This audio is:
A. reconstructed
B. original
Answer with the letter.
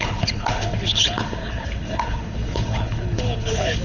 A